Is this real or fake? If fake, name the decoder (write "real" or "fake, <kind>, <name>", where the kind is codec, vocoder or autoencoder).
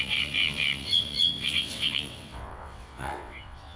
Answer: fake, vocoder, WaveNeXt